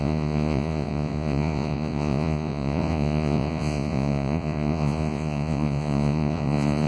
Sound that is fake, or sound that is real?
fake